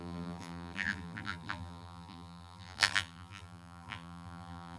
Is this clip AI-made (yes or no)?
yes